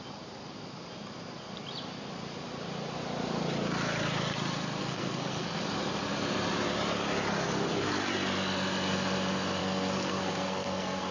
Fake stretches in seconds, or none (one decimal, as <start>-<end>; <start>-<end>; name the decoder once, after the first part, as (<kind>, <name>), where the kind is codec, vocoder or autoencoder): 4.8-5.6 (codec, SNAC); 9.6-11.1